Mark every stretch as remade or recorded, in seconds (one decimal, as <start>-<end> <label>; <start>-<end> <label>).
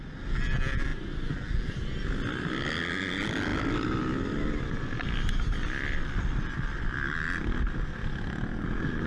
0.0-9.1 recorded